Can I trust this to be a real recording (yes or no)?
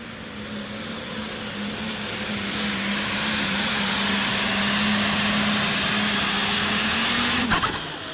yes